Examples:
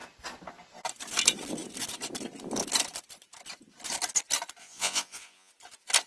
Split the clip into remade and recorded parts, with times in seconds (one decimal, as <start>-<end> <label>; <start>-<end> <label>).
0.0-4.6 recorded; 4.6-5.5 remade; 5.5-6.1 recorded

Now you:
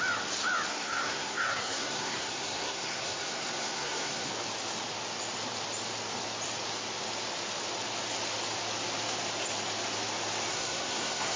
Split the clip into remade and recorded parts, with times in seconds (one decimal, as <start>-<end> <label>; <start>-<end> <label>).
0.0-0.7 recorded; 0.7-4.3 remade; 4.3-10.5 recorded; 10.5-11.4 remade

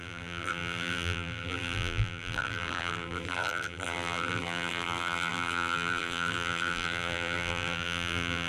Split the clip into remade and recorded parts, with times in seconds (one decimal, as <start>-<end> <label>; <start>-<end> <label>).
0.0-8.5 remade

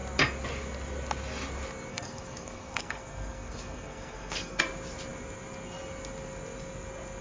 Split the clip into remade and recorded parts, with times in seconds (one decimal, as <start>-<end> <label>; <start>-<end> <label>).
0.0-1.9 recorded; 1.9-4.6 remade; 4.6-7.2 recorded

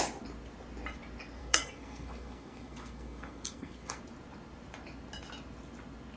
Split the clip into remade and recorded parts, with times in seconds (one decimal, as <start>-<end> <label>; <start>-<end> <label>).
0.0-1.4 recorded; 1.4-4.0 remade; 4.0-6.2 recorded

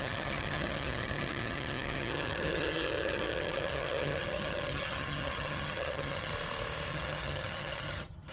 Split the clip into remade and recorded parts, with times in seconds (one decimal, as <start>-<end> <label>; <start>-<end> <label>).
0.0-6.3 remade; 6.3-6.9 recorded; 6.9-8.3 remade

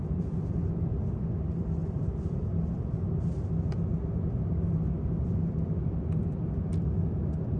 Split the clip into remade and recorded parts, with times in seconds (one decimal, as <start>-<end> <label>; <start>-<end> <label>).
0.0-7.6 recorded

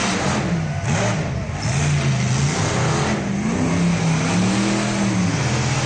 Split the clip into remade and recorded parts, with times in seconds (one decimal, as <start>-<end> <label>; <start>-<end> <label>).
0.0-5.9 recorded